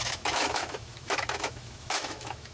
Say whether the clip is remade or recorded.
remade